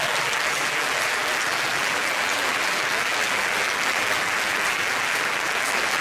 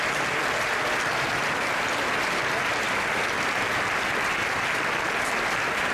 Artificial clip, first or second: first